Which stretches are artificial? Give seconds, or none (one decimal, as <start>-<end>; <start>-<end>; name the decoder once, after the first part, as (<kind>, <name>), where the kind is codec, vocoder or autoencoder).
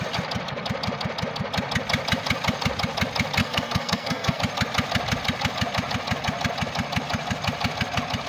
3.4-4.4 (codec, SNAC)